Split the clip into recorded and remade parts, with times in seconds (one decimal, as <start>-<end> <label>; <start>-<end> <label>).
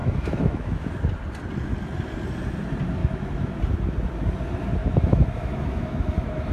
0.0-0.9 remade; 0.9-3.0 recorded; 3.0-3.6 remade; 3.6-4.8 recorded; 4.8-6.5 remade